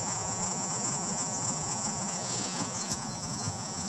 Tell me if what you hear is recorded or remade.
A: remade